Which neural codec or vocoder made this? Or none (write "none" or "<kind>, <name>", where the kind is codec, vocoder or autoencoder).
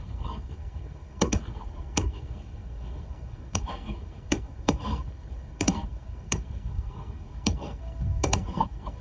codec, SNAC